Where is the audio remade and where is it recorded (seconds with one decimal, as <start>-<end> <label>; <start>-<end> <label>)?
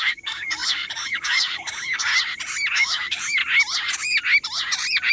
0.0-2.1 remade; 2.1-2.7 recorded; 2.7-3.4 remade; 3.4-5.1 recorded